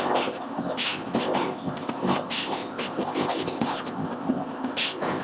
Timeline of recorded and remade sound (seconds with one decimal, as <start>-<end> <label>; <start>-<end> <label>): 0.0-5.2 remade